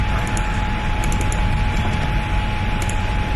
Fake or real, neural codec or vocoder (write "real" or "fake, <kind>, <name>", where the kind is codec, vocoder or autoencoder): real